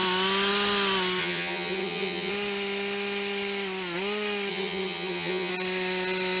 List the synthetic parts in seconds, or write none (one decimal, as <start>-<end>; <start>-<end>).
1.2-2.3; 4.5-5.5